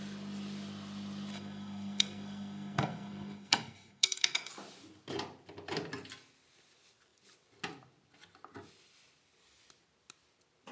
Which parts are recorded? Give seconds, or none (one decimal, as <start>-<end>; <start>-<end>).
0.0-1.3; 4.5-10.7